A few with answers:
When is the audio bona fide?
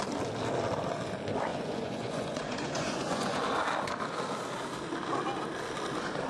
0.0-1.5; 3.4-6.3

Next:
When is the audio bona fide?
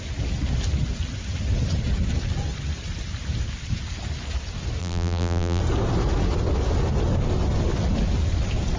0.0-4.8; 5.6-8.8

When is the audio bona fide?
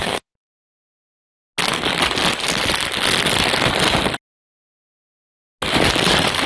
1.0-6.5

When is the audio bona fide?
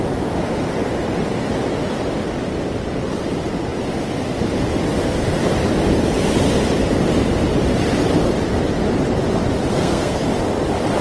0.0-9.7; 10.2-11.0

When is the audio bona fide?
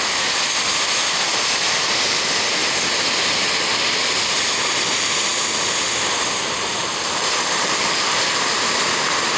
2.6-4.7; 5.3-6.4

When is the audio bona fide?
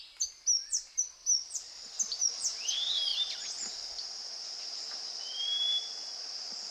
0.0-1.2; 2.2-6.7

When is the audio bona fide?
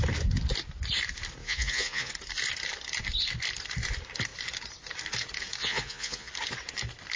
0.0-1.4; 2.1-5.6; 6.3-7.2